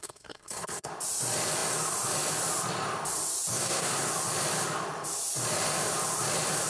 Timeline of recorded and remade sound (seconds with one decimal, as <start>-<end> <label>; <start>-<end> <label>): 0.0-0.9 remade; 0.9-3.5 recorded; 3.5-4.1 remade; 4.1-6.7 recorded